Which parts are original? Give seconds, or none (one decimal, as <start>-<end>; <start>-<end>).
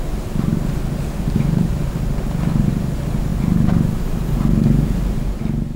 0.0-5.8